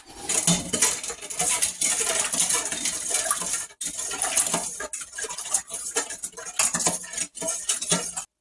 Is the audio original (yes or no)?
yes